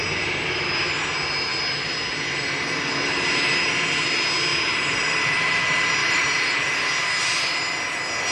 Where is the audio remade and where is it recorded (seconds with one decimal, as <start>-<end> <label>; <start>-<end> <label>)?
0.0-6.0 recorded; 6.0-6.8 remade; 6.8-8.3 recorded